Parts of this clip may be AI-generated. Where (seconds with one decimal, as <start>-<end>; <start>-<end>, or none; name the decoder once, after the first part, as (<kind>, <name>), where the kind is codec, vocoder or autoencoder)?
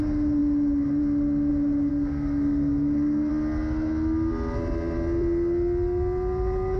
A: 1.9-3.3 (codec, SNAC)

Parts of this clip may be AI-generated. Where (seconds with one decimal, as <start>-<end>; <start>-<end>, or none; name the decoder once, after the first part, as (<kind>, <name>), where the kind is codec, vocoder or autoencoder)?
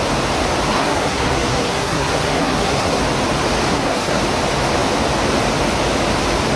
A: 0.7-3.0 (codec, SNAC); 3.7-4.2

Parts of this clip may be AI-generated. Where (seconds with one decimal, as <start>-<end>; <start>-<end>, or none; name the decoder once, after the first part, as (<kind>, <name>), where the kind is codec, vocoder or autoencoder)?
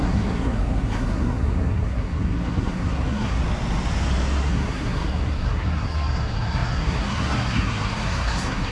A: 0.0-3.4 (codec, SNAC); 4.4-8.7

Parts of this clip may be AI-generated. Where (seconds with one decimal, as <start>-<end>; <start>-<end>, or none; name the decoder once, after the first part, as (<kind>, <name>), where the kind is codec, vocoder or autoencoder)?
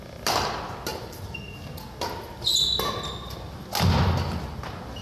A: none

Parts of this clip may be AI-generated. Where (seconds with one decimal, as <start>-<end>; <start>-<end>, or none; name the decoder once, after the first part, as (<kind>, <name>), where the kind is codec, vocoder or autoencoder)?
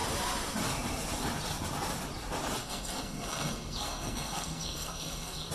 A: 2.6-5.5 (codec, SNAC)